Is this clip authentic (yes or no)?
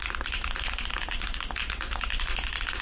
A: yes